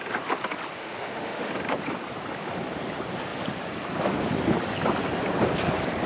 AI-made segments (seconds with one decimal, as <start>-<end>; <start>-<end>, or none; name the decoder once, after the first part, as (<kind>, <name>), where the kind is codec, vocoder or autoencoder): 0.8-1.5 (autoencoder, DAC-VAE)